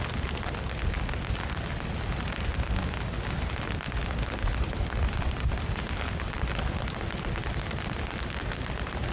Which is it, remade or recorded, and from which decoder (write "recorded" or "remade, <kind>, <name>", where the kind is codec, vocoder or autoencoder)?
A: recorded